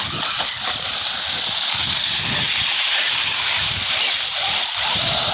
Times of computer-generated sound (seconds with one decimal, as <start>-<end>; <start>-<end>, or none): 2.6-3.8